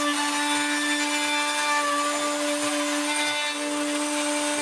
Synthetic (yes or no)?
no